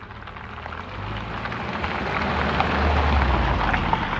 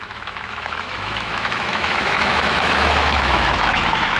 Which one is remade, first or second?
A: second